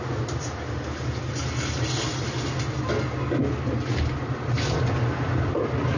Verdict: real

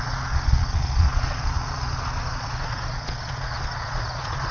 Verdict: fake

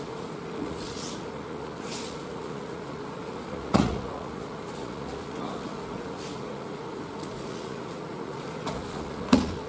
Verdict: fake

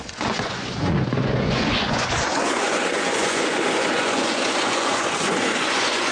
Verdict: fake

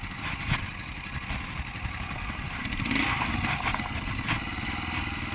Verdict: real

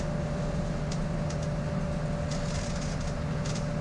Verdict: real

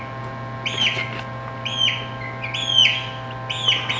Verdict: real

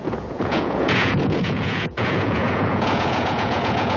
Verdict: fake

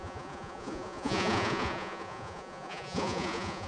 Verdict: fake